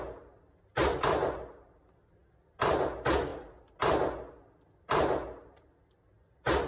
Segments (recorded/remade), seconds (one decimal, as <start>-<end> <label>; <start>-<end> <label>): 0.0-6.7 recorded